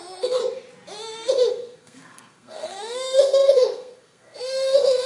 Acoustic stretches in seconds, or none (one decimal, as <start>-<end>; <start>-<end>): 0.4-1.5